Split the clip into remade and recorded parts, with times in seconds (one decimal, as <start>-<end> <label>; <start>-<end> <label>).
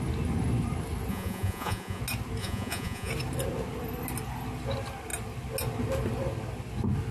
0.0-1.1 recorded; 1.1-2.0 remade; 2.0-2.4 recorded; 2.4-3.1 remade; 3.1-7.1 recorded